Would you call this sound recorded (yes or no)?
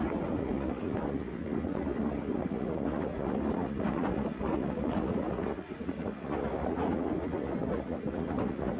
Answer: no